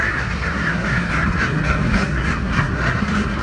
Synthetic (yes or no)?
yes